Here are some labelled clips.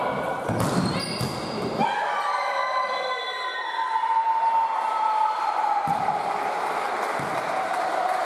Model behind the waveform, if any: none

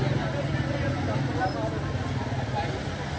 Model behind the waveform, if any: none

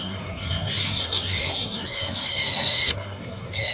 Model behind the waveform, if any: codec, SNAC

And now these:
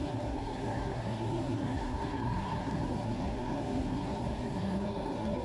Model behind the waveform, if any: codec, SNAC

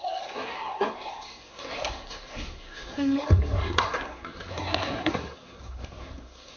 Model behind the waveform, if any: codec, SNAC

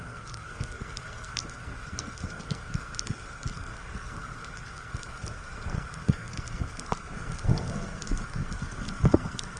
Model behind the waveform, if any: codec, SNAC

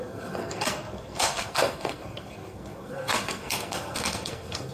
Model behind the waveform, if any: codec, SNAC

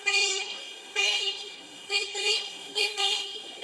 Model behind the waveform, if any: codec, SNAC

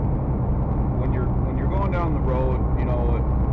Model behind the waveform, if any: none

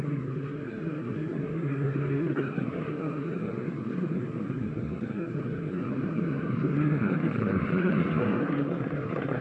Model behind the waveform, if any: codec, SNAC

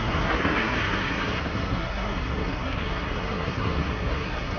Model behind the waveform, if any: codec, SNAC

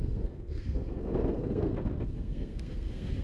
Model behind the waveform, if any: codec, SNAC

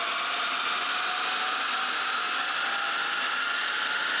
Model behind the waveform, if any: none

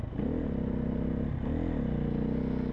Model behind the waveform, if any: none